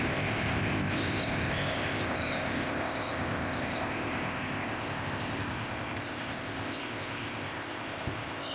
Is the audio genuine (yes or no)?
no